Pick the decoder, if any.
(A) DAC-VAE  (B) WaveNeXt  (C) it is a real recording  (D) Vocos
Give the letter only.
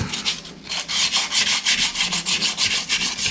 C